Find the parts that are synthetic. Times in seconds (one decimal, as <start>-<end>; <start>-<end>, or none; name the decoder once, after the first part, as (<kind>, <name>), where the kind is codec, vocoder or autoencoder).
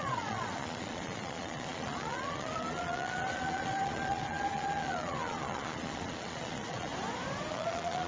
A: 0.0-6.9 (vocoder, Vocos); 7.5-8.1